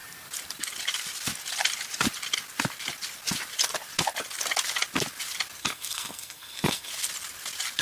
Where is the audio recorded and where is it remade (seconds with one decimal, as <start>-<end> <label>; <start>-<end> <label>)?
0.0-5.6 recorded; 5.6-6.9 remade; 6.9-7.8 recorded